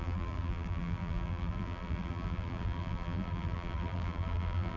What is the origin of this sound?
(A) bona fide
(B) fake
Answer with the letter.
B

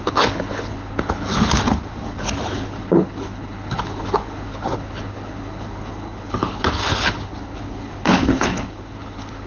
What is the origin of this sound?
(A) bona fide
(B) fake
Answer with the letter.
B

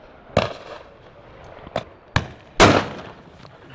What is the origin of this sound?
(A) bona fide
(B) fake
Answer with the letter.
A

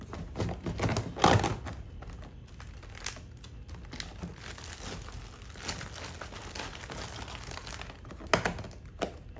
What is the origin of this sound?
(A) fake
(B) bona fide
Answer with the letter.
B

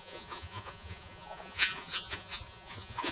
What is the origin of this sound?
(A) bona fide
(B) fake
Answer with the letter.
B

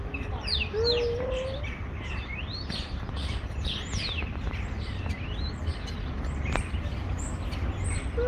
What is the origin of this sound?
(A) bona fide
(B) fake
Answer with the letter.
A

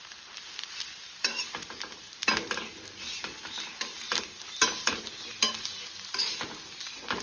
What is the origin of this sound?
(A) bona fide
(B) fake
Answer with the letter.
A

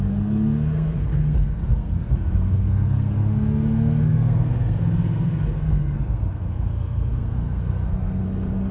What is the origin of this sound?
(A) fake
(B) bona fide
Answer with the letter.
A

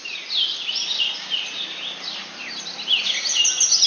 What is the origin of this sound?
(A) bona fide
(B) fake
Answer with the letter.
A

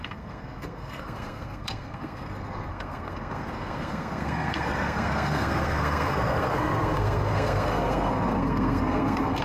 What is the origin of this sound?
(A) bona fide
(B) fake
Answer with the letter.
B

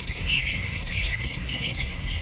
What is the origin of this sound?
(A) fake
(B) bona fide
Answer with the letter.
A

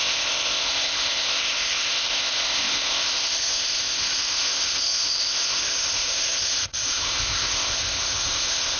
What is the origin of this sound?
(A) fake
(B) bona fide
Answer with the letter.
A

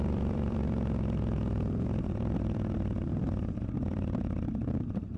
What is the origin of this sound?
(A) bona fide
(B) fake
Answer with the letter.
B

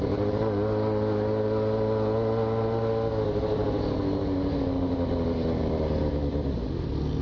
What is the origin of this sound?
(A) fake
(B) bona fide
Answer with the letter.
B